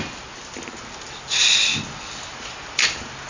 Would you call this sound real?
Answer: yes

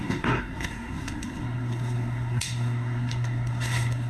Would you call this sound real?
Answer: no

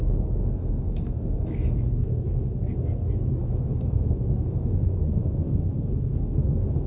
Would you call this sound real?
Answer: no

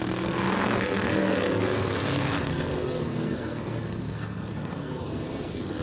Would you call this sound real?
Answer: no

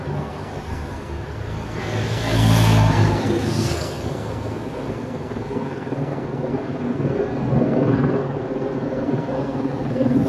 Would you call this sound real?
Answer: no